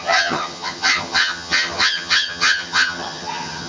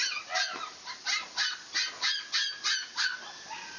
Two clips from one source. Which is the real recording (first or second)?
second